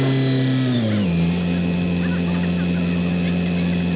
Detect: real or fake real